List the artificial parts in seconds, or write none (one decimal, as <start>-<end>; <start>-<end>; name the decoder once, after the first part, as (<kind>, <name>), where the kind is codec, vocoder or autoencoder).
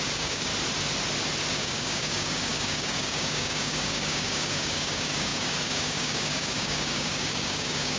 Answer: 0.0-0.5 (codec, DAC); 1.5-8.0